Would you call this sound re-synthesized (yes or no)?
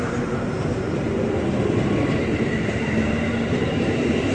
yes